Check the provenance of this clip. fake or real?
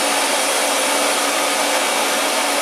real